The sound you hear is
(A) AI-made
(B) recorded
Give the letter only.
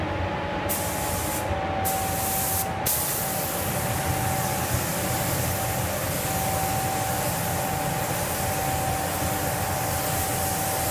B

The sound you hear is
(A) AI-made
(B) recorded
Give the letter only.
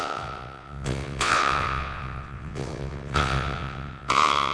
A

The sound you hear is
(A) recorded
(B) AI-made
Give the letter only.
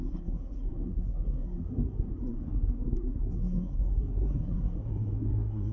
B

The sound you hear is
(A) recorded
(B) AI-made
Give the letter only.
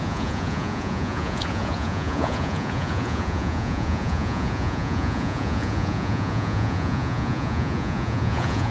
B